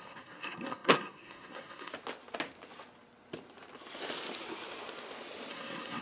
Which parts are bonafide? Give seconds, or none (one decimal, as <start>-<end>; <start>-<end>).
1.9-5.5